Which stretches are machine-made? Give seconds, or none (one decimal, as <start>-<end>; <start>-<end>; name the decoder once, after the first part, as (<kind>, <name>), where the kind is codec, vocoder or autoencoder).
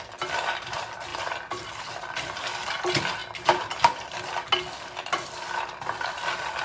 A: none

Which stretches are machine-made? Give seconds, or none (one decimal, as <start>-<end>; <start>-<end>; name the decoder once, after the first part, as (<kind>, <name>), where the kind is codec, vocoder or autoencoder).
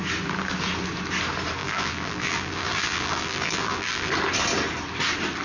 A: 1.6-4.1 (vocoder, BigVGAN v2)